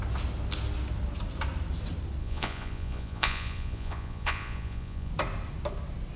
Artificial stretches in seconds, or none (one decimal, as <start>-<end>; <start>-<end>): 2.2-5.1